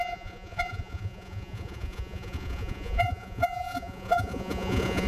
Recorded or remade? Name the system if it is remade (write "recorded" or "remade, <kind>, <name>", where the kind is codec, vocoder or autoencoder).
remade, vocoder, Vocos